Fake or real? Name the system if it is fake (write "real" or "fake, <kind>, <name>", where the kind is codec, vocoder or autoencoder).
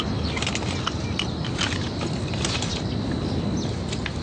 real